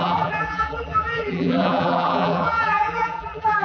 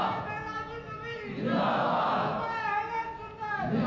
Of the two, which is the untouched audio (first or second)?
second